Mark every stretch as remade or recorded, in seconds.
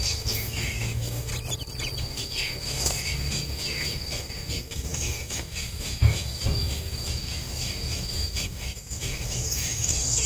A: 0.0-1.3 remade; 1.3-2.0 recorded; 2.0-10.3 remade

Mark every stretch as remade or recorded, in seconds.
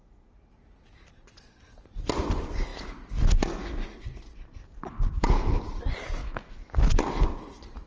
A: 0.0-6.2 recorded; 6.2-6.7 remade; 6.7-7.9 recorded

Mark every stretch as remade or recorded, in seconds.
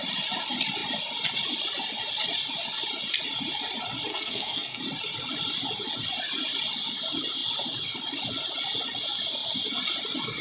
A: 0.0-4.1 recorded; 4.1-4.8 remade; 4.8-10.4 recorded